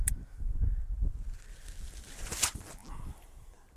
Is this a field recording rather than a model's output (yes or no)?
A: yes